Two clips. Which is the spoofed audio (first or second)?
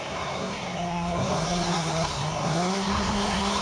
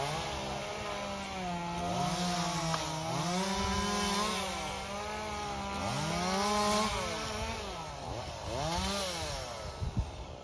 first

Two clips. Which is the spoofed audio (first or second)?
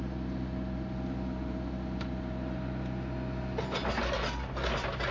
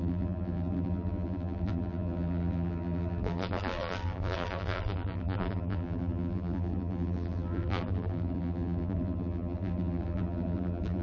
second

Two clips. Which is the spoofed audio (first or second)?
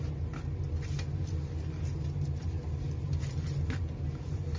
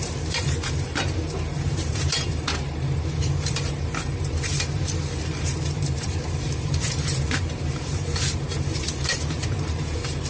second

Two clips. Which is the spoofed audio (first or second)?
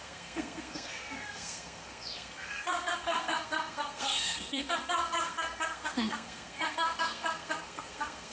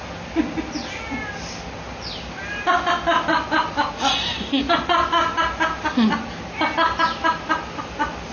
first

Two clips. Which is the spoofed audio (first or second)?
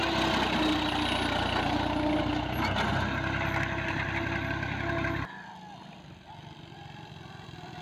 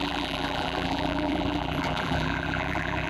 second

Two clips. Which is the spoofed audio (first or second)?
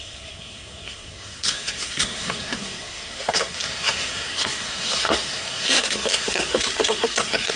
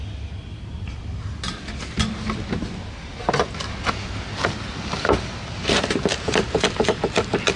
first